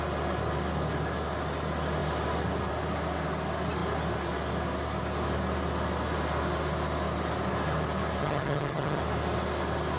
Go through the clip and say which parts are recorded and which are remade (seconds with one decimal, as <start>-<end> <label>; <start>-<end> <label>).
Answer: 0.0-8.2 recorded; 8.2-9.0 remade; 9.0-10.0 recorded